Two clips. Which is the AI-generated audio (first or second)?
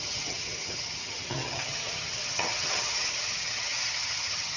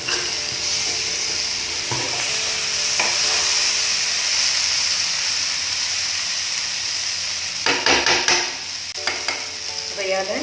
first